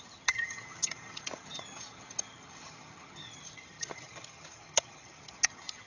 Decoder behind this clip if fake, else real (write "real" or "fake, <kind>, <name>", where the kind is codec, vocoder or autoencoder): fake, vocoder, HiFi-GAN